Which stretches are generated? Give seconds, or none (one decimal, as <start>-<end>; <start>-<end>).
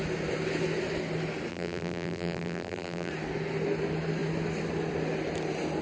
1.5-3.1